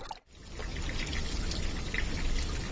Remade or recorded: recorded